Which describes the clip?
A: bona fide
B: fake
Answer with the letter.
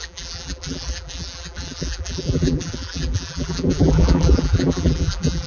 B